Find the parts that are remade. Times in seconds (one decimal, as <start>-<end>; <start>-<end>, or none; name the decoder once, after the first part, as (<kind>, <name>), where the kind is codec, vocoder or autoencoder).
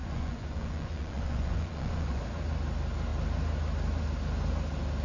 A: 0.0-2.2 (vocoder, Vocos)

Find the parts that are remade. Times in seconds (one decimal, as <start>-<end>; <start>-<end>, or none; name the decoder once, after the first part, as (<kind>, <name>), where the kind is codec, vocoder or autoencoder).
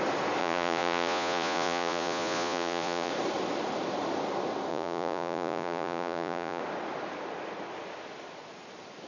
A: 0.4-3.1 (vocoder, Vocos); 4.7-6.6